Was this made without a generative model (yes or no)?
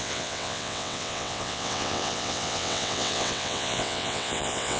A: no